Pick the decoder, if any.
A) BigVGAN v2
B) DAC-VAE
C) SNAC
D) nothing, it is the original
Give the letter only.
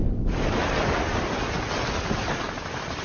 D